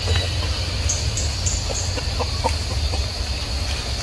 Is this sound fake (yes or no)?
no